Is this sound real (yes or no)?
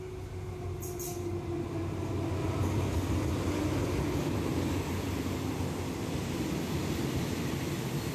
yes